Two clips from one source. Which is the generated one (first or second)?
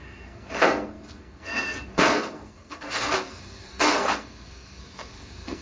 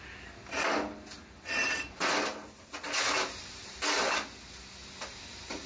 first